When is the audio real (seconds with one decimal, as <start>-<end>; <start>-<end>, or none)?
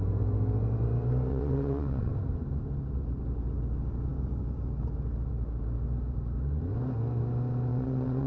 0.0-1.3; 2.1-7.7